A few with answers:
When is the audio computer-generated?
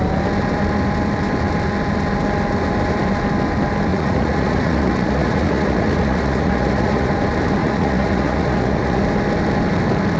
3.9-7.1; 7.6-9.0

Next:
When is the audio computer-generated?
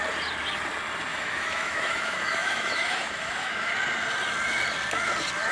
1.1-3.7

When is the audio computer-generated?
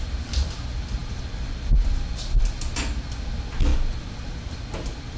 none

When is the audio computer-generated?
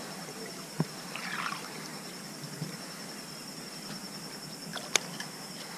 1.9-2.9; 4.7-5.8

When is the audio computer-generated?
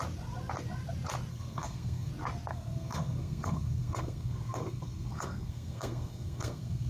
1.3-2.1; 2.5-6.9